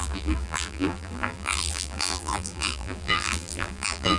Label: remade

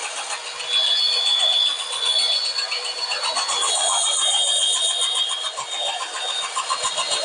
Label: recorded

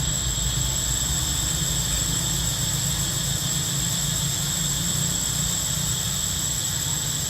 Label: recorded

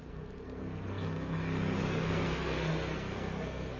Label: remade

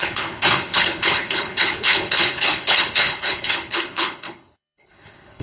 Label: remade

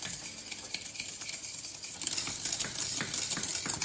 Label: recorded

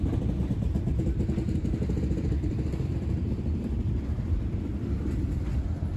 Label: remade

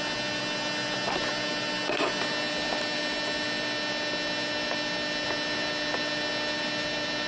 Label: recorded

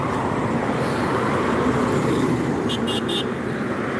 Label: remade